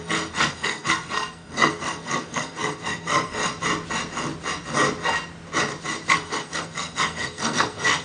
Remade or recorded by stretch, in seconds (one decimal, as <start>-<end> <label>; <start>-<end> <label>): 0.0-3.4 remade; 3.4-6.1 recorded; 6.1-8.0 remade